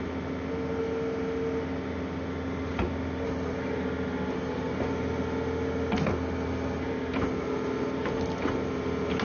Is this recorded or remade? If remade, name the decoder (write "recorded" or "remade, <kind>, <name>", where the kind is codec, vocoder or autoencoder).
recorded